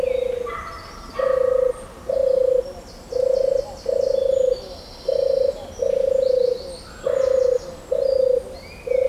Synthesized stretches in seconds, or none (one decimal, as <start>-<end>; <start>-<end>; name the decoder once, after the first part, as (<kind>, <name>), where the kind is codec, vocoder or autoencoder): none